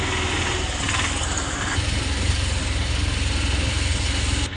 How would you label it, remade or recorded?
recorded